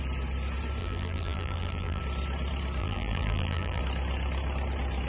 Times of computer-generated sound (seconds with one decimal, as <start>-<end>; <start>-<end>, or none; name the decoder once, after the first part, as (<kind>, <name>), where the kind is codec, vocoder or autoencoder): 0.8-2.0 (vocoder, BigVGAN v2); 2.8-3.8

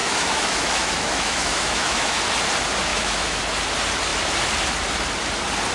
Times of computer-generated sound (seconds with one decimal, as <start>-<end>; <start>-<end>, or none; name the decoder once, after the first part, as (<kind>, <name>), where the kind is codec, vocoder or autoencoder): 0.0-2.2 (autoencoder, DAC-VAE); 2.9-3.4

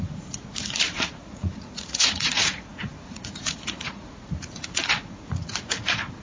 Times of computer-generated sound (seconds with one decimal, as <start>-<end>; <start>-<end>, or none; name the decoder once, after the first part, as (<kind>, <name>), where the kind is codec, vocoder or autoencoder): 0.0-6.2 (vocoder, Vocos)